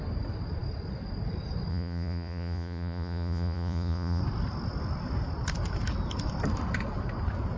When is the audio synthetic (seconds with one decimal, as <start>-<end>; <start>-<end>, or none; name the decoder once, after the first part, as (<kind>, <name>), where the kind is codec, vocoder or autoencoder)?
1.7-4.2 (vocoder, Vocos)